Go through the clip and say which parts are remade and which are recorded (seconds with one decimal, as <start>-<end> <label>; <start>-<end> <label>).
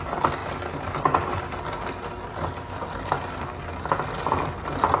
0.0-5.0 recorded